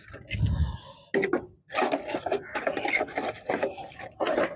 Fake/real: real